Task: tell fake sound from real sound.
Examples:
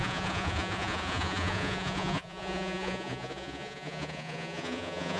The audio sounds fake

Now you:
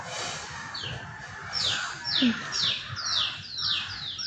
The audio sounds real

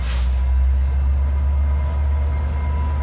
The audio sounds real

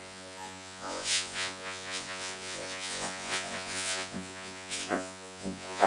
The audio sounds fake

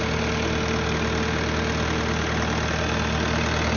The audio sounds real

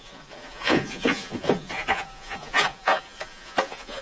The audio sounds fake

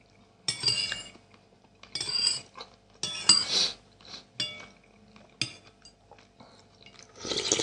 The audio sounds real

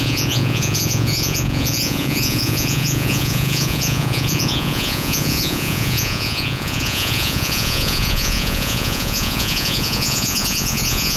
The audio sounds fake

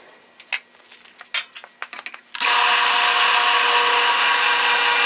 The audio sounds real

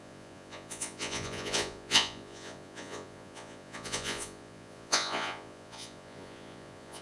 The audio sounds fake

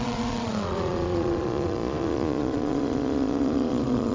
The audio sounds fake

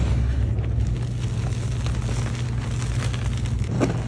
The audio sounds real